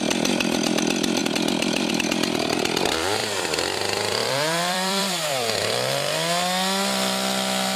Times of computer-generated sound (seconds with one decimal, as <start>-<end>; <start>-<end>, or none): 1.2-1.9; 3.2-6.1